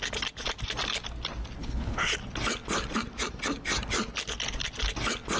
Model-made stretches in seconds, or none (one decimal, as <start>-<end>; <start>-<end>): 1.6-2.1